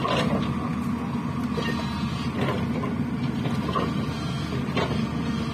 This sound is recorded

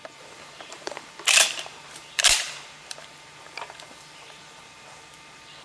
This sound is remade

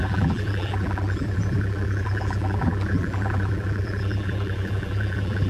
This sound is remade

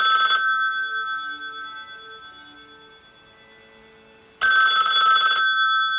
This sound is recorded